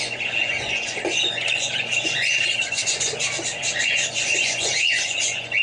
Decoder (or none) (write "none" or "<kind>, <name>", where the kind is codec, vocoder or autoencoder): vocoder, Vocos